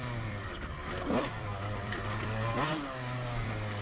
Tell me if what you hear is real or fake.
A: fake